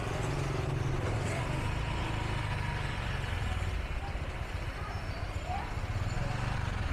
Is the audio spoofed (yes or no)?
no